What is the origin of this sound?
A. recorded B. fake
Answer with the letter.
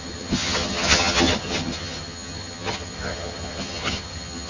B